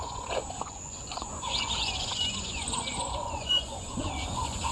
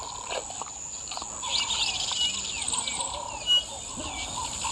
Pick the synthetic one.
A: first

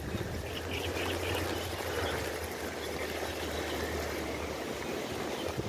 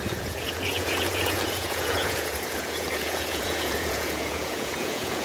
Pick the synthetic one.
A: second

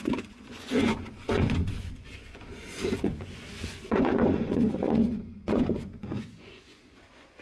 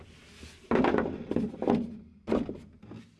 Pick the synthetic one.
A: first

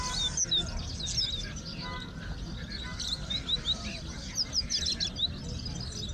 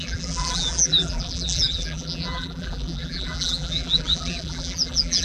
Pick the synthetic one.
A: second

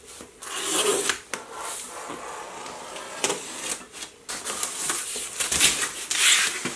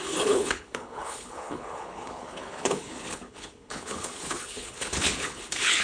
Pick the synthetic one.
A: second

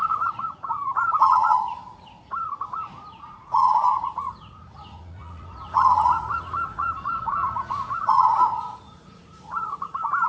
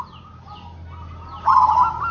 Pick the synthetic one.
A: first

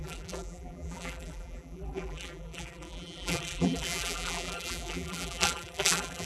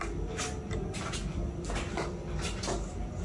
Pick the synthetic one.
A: first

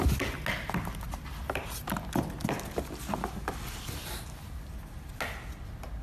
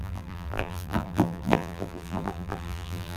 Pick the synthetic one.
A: second